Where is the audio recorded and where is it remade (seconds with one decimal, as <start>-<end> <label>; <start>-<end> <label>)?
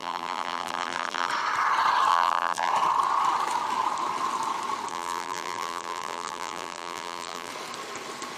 0.0-1.3 remade; 1.3-2.1 recorded; 2.1-2.7 remade; 2.7-4.9 recorded; 4.9-7.5 remade; 7.5-8.4 recorded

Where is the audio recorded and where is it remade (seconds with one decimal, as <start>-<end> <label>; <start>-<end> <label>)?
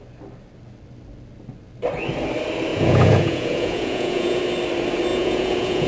0.0-2.7 recorded; 2.7-4.4 remade; 4.4-5.1 recorded; 5.1-5.9 remade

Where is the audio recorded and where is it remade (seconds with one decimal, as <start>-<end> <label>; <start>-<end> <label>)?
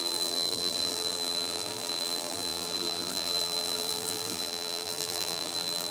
0.0-5.9 remade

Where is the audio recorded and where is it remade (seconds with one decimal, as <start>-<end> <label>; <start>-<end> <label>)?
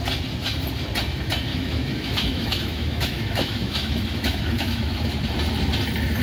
0.0-1.5 recorded; 1.5-5.2 remade; 5.2-6.2 recorded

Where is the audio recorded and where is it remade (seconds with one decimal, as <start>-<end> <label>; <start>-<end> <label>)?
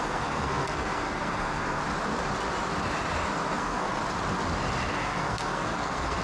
0.0-1.8 remade; 1.8-3.2 recorded; 3.2-4.0 remade; 4.0-4.9 recorded; 4.9-6.2 remade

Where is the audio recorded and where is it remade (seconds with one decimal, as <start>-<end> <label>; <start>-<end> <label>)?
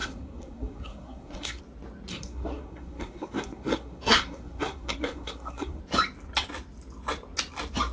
0.0-1.6 remade; 1.6-2.1 recorded; 2.1-5.8 remade; 5.8-7.9 recorded